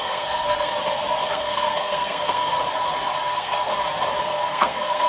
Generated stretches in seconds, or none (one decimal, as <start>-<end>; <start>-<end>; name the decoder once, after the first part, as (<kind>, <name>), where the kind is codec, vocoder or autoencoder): 0.0-0.7 (codec, SNAC); 1.3-2.5; 3.2-3.7; 4.2-5.1